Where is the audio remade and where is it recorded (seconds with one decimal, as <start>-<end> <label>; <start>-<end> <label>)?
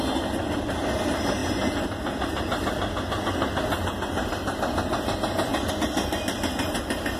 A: 0.0-7.2 recorded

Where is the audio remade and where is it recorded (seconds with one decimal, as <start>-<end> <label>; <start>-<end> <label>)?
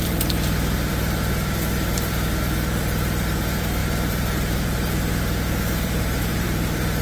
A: 0.0-7.0 remade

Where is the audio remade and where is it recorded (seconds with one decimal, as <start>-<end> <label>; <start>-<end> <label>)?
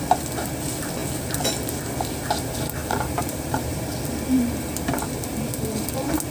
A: 0.0-2.8 recorded; 2.8-3.9 remade; 3.9-6.3 recorded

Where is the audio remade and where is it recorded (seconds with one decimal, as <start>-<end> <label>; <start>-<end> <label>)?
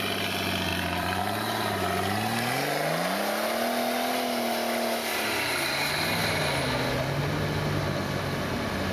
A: 0.0-0.7 recorded; 0.7-1.2 remade; 1.2-8.9 recorded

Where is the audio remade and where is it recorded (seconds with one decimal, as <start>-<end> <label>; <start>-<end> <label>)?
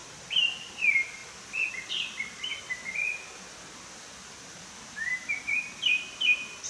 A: 0.0-1.2 remade; 1.2-1.7 recorded; 1.7-2.5 remade; 2.5-5.1 recorded; 5.1-6.7 remade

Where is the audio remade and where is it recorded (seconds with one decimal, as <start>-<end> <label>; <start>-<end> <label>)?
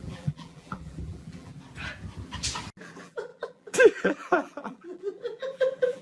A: 0.0-1.5 remade; 1.5-2.8 recorded; 2.8-6.0 remade